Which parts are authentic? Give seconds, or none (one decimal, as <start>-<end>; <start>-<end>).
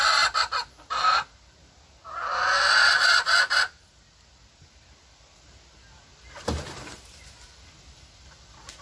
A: 0.0-8.8